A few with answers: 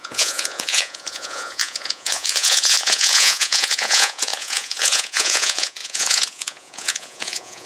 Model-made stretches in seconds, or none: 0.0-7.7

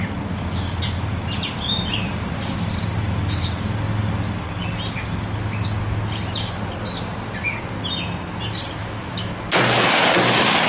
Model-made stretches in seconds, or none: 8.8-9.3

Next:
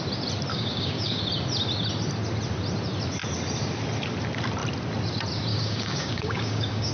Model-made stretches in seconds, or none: 0.5-1.2; 5.5-6.9

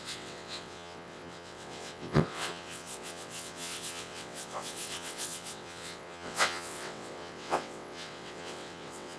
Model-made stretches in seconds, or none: 0.0-9.2

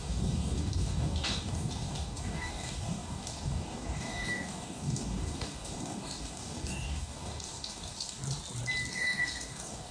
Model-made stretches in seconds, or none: 0.0-8.2; 8.9-9.9

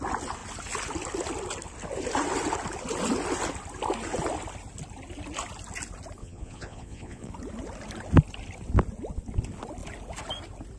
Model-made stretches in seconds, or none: 6.2-7.3

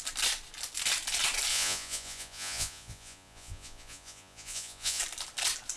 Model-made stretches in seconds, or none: 1.5-5.0

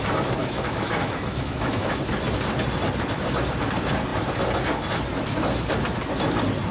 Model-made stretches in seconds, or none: 0.4-2.0